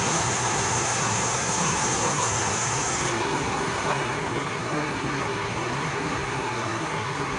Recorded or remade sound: remade